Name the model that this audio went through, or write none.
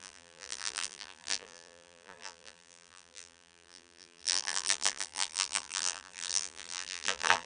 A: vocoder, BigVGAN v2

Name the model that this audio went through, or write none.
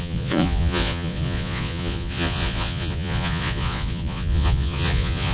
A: vocoder, Vocos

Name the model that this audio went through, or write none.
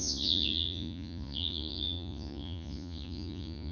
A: vocoder, Vocos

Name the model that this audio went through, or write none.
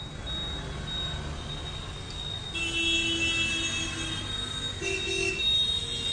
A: none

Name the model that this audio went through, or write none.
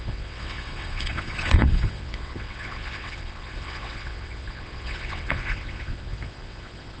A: vocoder, WaveNeXt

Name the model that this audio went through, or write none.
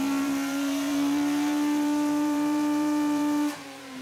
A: vocoder, BigVGAN v2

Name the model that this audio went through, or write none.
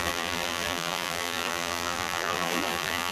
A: vocoder, BigVGAN v2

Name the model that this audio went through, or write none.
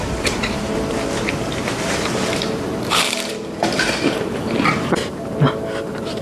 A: vocoder, BigVGAN v2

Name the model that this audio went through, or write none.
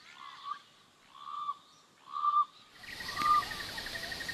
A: none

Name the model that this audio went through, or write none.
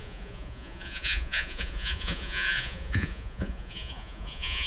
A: vocoder, Vocos